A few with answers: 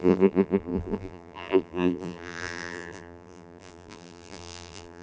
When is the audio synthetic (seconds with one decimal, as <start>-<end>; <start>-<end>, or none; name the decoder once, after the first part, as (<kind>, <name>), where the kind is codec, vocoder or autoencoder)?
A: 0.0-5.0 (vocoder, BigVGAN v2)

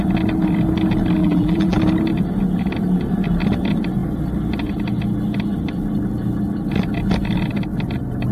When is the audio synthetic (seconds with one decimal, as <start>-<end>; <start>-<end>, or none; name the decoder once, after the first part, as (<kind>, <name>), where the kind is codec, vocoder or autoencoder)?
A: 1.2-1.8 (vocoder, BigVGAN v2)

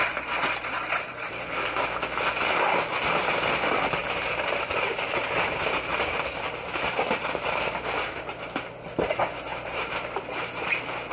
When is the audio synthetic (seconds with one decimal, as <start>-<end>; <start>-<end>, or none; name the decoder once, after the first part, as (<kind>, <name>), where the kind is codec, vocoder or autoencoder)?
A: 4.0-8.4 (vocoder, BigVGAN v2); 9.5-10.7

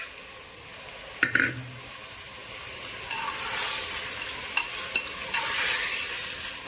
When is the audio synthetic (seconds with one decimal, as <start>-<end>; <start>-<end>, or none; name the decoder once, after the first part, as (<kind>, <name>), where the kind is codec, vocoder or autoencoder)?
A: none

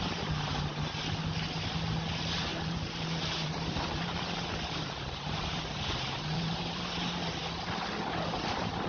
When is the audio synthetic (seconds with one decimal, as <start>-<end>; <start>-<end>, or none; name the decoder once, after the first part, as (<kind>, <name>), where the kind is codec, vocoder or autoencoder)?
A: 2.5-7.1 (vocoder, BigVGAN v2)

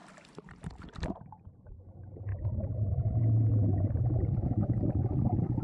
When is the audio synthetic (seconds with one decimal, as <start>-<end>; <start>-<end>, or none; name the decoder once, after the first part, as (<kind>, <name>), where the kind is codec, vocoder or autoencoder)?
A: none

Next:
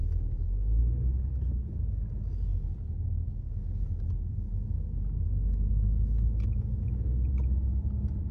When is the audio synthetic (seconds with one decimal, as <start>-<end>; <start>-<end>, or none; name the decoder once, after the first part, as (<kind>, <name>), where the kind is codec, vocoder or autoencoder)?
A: none

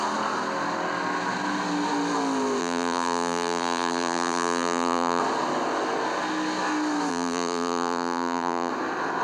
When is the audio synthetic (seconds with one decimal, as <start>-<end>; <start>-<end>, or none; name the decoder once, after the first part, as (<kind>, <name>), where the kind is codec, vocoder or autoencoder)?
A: 2.6-5.2 (vocoder, BigVGAN v2); 7.1-8.7